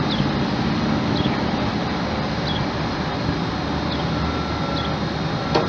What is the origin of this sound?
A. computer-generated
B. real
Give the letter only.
B